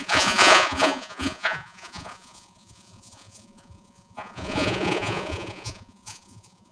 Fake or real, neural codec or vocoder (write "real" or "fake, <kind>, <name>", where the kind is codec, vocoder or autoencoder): fake, vocoder, Vocos